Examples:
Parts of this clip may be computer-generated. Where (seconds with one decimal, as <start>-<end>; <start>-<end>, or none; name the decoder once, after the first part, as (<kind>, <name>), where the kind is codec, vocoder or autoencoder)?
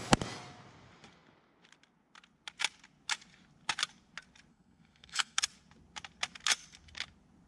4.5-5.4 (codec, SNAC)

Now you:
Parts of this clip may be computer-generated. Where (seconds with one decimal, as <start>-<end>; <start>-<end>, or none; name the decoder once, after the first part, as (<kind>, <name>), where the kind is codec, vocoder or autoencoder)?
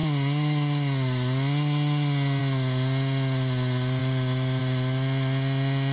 none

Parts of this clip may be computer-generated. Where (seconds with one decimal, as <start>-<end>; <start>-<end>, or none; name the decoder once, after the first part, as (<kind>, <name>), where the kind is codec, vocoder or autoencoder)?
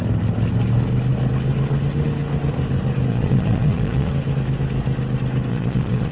3.1-4.1 (vocoder, Vocos); 5.5-6.1